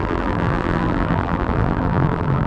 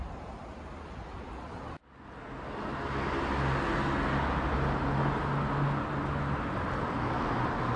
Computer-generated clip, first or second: first